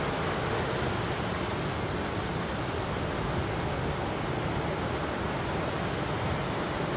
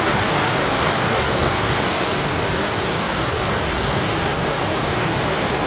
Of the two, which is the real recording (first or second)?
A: first